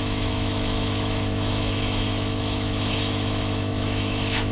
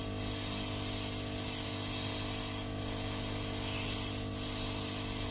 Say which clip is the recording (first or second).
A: second